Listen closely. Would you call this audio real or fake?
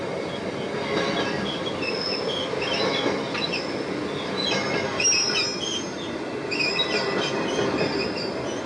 real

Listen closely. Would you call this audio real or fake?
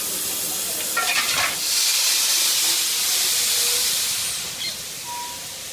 real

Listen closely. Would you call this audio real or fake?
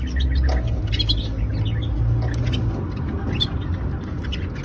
real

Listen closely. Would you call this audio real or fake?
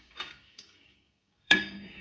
fake